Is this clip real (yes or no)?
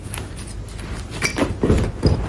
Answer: yes